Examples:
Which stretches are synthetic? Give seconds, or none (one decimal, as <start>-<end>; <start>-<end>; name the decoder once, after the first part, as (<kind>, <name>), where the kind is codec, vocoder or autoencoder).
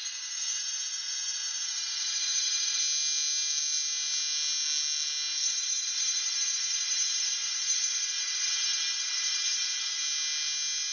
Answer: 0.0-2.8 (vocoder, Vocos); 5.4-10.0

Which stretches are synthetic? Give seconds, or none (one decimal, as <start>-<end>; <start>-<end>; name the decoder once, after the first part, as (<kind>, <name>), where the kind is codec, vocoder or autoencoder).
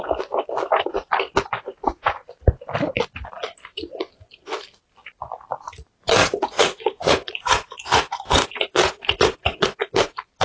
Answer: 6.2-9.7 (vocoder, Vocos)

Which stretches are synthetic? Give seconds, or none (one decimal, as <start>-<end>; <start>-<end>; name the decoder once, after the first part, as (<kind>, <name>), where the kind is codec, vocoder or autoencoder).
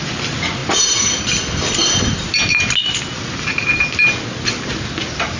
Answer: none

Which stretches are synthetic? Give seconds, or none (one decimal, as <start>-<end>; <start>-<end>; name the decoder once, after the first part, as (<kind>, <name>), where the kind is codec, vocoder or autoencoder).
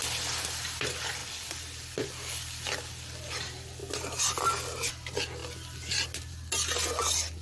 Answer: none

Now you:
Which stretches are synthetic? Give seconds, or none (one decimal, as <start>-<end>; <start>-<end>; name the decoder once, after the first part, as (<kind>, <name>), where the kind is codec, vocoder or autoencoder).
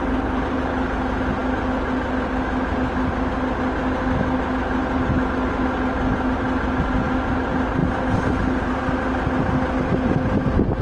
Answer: none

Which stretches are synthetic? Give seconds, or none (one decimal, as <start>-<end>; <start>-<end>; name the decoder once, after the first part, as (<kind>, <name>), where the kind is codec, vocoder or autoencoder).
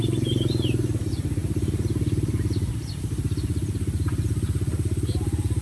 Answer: none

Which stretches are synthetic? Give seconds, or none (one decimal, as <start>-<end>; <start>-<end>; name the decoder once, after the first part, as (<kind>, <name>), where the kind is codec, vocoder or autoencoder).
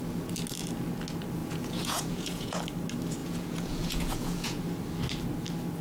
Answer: 1.4-2.6 (vocoder, Vocos); 3.2-4.6